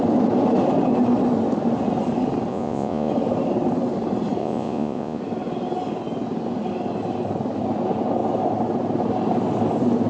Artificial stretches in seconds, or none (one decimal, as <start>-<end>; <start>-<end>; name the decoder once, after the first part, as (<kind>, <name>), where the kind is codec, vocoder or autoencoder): 2.5-3.1 (vocoder, Vocos); 4.4-5.2